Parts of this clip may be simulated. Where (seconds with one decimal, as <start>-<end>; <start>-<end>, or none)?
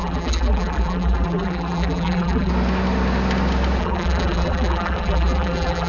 0.0-2.5; 3.8-5.9